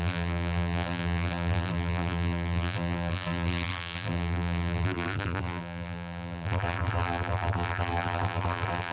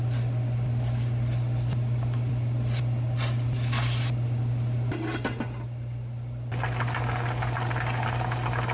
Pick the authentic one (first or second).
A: second